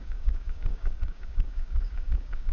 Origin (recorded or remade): remade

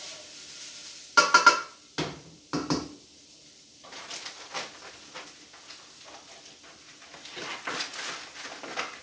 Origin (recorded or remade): recorded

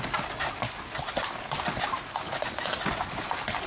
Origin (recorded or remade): recorded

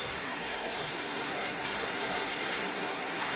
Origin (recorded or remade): remade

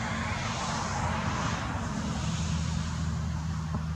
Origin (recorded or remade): recorded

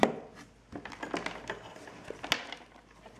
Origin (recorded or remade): recorded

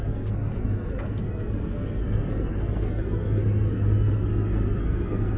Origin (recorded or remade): remade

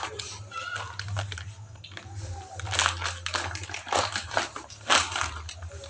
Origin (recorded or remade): recorded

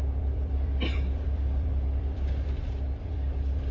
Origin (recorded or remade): remade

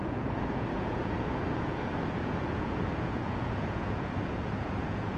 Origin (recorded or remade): remade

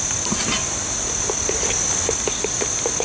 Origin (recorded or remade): recorded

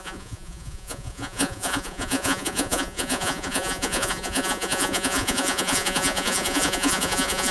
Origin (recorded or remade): remade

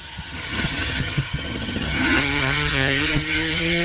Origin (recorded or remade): remade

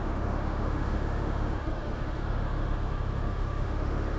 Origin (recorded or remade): remade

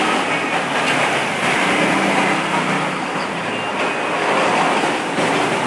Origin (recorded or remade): recorded